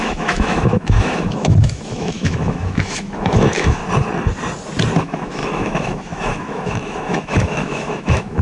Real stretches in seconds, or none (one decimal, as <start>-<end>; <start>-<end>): 3.8-5.0